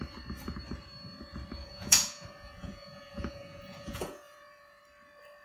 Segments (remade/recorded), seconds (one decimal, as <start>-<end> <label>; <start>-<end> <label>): 0.0-1.6 recorded; 1.6-4.8 remade; 4.8-5.4 recorded